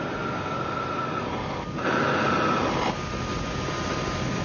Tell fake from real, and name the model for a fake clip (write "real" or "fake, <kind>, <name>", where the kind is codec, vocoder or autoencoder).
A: real